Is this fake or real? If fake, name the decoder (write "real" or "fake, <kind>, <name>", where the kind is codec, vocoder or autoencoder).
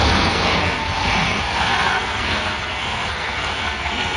fake, codec, SNAC